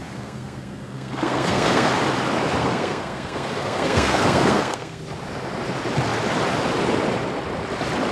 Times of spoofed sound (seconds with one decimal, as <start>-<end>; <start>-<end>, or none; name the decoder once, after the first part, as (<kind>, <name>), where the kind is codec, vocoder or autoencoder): 0.0-1.9 (codec, SNAC); 2.6-5.0